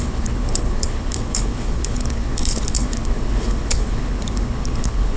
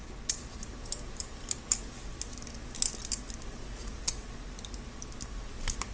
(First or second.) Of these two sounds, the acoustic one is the second